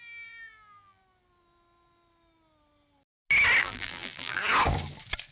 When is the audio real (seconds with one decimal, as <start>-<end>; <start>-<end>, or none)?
1.0-3.6; 4.4-5.3